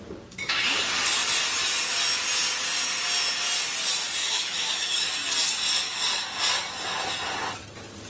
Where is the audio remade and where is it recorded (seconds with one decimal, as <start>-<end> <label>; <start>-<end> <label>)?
0.0-4.2 recorded; 4.2-5.1 remade; 5.1-8.1 recorded